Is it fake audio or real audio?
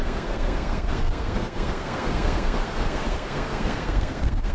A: fake